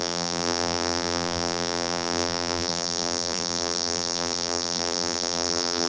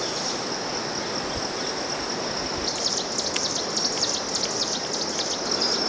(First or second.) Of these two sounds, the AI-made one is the first